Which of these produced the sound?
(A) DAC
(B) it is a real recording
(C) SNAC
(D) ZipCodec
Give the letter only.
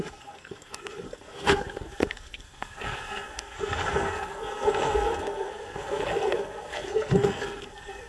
C